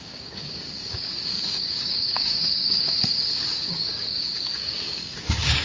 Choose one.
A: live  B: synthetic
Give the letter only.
B